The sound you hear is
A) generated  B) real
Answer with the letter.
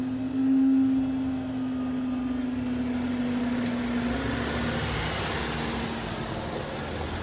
B